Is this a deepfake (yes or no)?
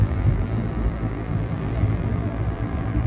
yes